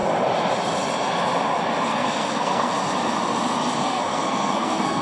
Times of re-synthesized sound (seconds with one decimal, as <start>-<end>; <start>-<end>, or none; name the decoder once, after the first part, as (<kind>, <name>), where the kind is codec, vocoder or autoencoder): 1.9-2.7 (codec, SNAC); 3.8-5.0